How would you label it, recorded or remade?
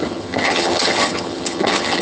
remade